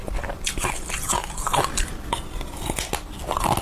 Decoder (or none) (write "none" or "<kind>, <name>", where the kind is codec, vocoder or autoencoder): none